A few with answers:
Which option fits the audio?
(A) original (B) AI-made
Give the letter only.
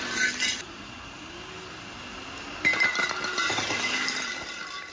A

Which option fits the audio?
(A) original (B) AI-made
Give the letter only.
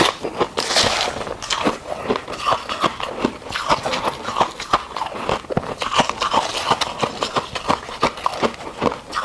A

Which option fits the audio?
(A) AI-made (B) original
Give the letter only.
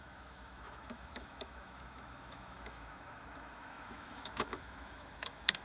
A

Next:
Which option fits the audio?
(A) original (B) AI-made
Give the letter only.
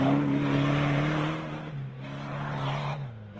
A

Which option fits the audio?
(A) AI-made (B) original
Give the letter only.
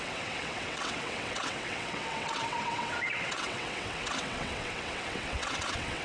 A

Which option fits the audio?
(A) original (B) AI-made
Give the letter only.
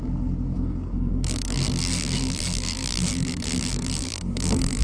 B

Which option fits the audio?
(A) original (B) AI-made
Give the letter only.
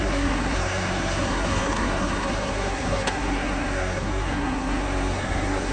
B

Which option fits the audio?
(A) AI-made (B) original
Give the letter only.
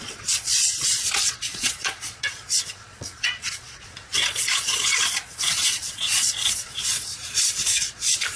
A